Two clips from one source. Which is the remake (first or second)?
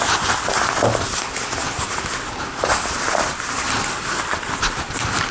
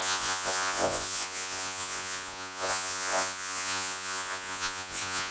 second